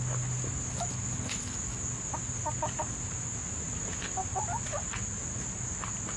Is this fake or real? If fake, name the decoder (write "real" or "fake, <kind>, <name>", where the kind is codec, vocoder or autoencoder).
real